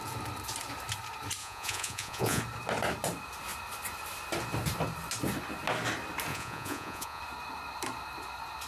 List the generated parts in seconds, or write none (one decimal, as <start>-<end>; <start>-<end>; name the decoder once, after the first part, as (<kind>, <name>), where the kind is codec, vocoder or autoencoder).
1.4-2.4 (vocoder, Vocos); 6.3-7.2